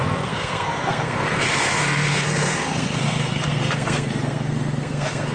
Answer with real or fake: fake